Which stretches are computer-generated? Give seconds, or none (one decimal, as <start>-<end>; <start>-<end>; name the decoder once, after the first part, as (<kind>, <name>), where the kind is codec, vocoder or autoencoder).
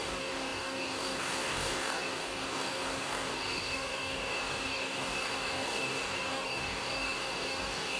0.0-8.0 (codec, DAC)